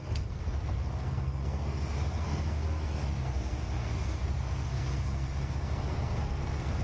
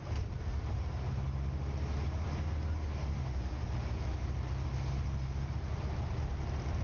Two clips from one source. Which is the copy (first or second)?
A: first